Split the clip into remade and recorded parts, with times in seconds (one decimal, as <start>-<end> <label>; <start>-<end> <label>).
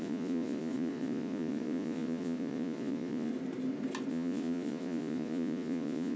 0.0-3.3 remade; 3.3-4.1 recorded; 4.1-6.2 remade